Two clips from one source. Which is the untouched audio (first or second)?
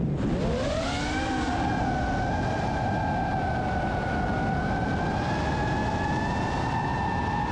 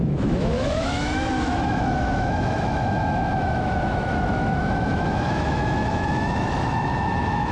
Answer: first